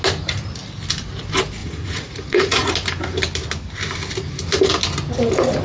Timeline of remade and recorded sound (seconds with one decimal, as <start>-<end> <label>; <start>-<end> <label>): 0.0-1.6 recorded; 1.6-2.7 remade; 2.7-5.6 recorded